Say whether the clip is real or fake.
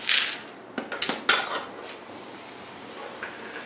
real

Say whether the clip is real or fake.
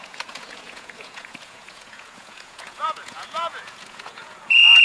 fake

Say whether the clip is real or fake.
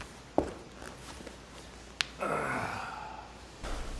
real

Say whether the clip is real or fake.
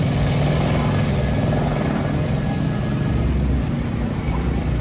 real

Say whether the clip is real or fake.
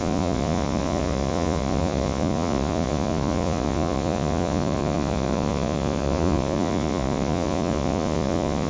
fake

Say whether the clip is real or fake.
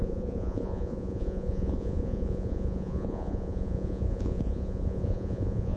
fake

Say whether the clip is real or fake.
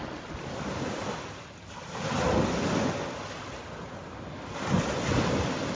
real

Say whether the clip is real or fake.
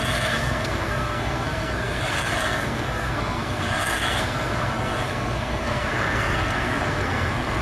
fake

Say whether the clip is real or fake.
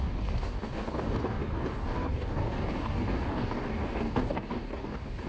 fake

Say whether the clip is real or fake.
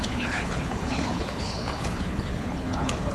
fake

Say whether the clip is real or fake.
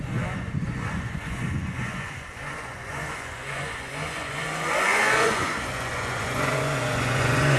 fake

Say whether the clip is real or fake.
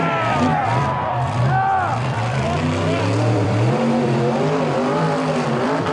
fake